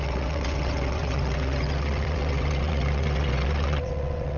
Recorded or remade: remade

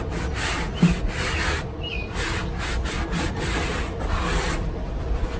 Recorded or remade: recorded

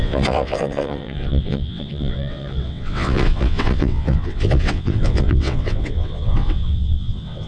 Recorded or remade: remade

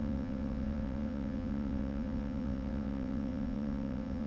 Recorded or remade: remade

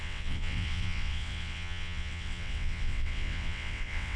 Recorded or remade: remade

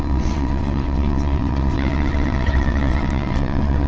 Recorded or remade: remade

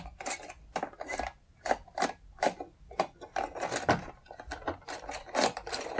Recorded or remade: recorded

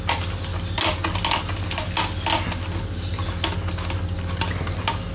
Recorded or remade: recorded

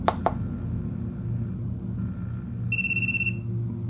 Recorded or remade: recorded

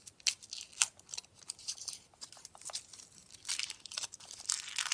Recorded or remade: recorded